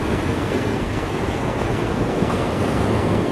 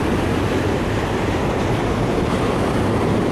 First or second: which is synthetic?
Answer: first